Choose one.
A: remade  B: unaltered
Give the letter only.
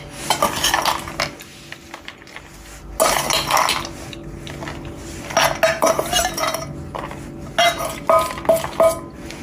B